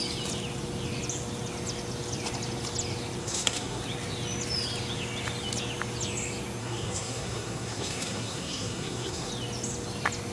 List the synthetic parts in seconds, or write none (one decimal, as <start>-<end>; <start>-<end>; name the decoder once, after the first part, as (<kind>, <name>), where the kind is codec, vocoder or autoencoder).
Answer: 3.2-3.8 (codec, SNAC); 6.6-9.3